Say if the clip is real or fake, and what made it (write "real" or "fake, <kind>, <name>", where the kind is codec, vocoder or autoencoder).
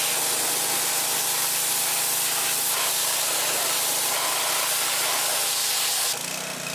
real